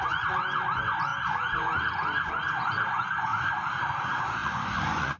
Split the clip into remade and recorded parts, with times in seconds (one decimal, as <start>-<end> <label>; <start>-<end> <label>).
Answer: 0.0-3.3 remade; 3.3-4.0 recorded; 4.0-5.2 remade